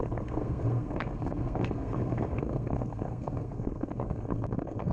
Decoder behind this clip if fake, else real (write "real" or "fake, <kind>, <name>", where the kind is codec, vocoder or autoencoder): fake, codec, SNAC